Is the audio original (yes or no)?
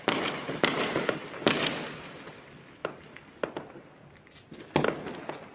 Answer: yes